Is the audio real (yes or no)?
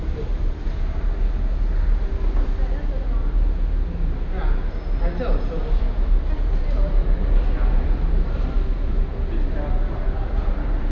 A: yes